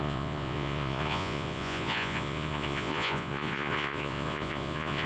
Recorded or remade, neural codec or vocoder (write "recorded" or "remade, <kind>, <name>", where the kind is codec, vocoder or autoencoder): remade, vocoder, Vocos